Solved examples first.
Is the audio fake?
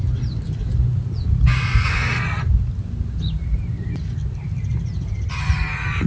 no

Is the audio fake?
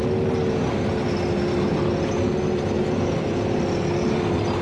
no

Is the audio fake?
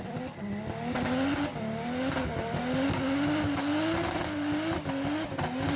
no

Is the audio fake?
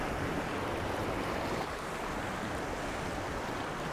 no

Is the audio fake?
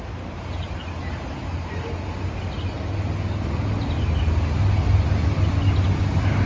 no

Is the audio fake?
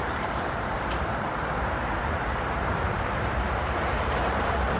yes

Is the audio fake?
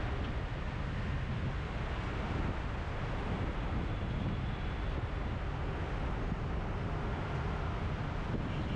no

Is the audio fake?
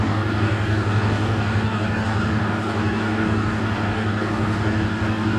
yes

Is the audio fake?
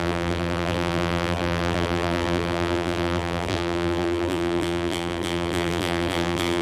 yes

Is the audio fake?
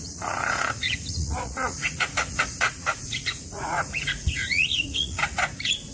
yes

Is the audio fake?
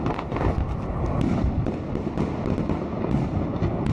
no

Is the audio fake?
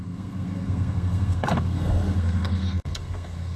yes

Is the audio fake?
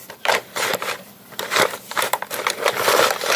yes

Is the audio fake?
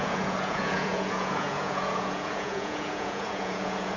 yes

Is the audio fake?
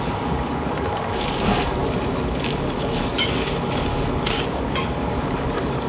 yes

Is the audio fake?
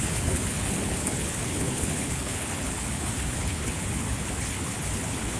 yes